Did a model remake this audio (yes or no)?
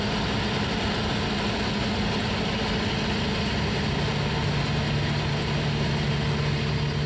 no